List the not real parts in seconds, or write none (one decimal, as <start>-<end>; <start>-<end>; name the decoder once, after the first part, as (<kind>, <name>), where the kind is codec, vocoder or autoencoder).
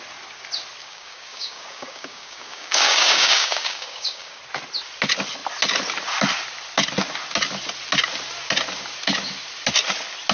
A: 0.8-4.4 (codec, DAC)